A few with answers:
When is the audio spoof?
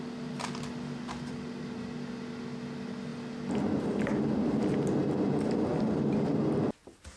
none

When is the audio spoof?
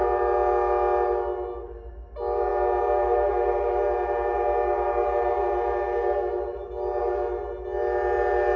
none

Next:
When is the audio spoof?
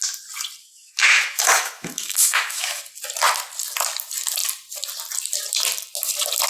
0.6-2.8 (autoencoder, DAC-VAE)